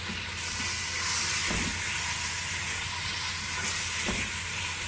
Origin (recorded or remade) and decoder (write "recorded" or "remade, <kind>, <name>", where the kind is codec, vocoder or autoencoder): recorded